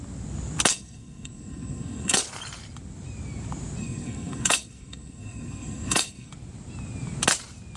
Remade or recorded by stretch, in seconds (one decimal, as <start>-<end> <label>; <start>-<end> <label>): 0.0-0.7 recorded; 0.7-2.2 remade; 2.2-3.8 recorded; 3.8-6.3 remade; 6.3-7.8 recorded